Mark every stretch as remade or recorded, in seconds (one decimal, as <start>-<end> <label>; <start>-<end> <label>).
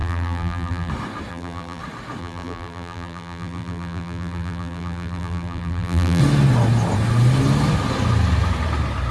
0.0-0.9 remade; 0.9-1.3 recorded; 1.3-1.8 remade; 1.8-2.2 recorded; 2.2-6.2 remade; 6.2-9.1 recorded